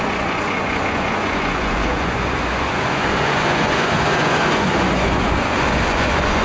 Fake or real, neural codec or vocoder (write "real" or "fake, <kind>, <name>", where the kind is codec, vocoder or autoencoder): fake, vocoder, Vocos